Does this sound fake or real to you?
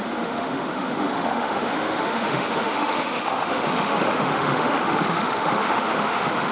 fake